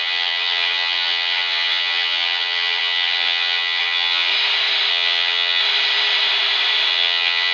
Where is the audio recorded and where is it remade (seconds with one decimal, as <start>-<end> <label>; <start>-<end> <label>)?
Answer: 0.0-4.3 remade; 4.3-4.9 recorded; 4.9-5.6 remade; 5.6-6.9 recorded; 6.9-7.5 remade